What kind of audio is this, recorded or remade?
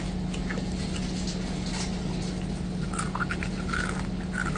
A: recorded